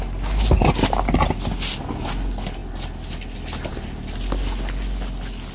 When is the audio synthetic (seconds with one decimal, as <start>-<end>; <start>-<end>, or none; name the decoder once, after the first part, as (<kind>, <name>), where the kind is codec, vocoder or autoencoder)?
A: none